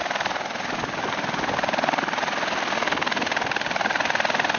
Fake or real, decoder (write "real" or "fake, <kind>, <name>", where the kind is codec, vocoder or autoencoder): real